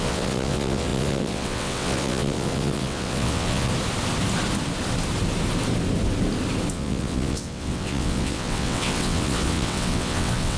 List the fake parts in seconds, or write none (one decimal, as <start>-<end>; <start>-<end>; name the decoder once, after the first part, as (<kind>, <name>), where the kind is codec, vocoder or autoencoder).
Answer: 0.0-3.7 (vocoder, WaveNeXt); 6.7-10.6